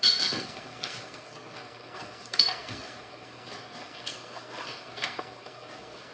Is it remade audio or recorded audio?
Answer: remade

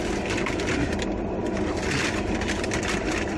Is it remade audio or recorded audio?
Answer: recorded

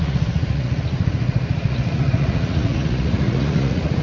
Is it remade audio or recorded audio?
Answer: remade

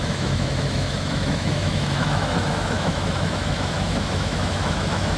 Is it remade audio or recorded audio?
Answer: remade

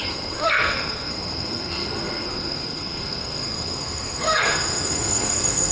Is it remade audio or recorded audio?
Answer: remade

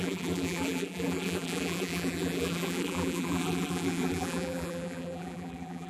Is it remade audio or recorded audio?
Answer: remade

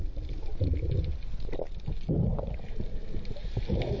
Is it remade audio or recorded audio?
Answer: recorded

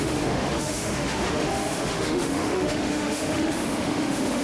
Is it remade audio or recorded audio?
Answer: remade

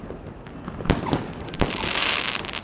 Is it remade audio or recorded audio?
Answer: recorded